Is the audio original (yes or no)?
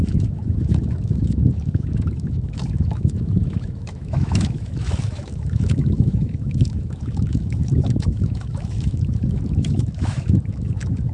no